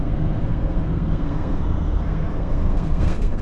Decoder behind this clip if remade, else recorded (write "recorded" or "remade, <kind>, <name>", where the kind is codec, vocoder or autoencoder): remade, codec, SNAC